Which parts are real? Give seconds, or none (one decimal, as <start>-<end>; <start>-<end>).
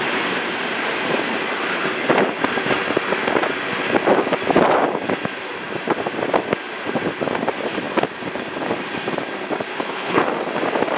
0.0-9.7; 10.2-11.0